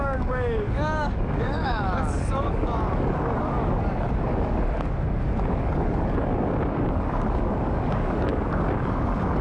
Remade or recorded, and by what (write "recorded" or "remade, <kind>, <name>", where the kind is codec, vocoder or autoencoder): remade, codec, DAC